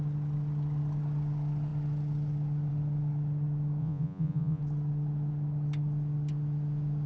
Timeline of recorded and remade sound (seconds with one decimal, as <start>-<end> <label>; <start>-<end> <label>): 0.0-3.8 recorded; 3.8-4.6 remade; 4.6-7.1 recorded